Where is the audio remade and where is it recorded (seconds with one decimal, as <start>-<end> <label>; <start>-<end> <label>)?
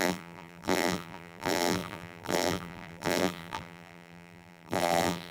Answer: 0.0-5.3 remade